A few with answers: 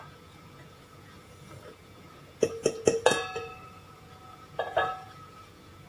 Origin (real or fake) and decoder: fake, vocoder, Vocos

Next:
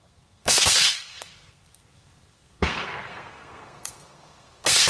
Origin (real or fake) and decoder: fake, codec, SNAC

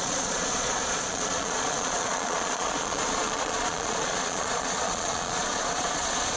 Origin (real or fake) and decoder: fake, vocoder, Vocos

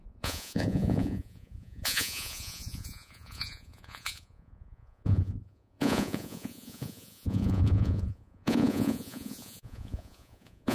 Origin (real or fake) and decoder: fake, vocoder, Vocos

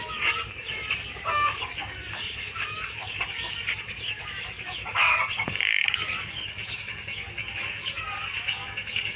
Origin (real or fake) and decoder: fake, codec, DAC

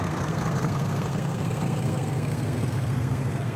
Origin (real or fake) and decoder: fake, codec, SNAC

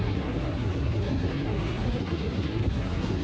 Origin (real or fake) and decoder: fake, codec, SNAC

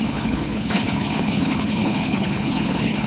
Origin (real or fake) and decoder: fake, codec, HILCodec